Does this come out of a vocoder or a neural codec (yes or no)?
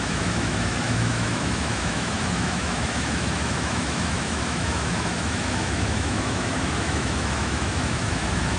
yes